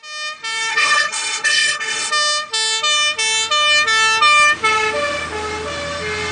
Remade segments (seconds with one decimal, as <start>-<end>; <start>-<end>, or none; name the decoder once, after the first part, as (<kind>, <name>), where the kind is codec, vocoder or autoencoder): 0.7-2.1 (codec, HILCodec)